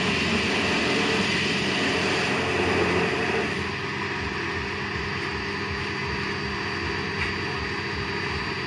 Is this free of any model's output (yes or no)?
yes